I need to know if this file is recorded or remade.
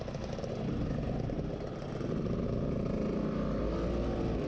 recorded